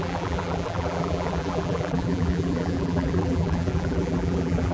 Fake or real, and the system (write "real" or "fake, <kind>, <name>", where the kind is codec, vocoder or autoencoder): fake, vocoder, BigVGAN v2